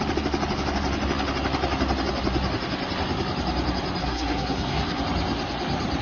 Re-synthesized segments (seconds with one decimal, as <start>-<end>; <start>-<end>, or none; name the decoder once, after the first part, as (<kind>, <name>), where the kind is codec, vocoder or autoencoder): 4.0-5.0 (codec, SNAC)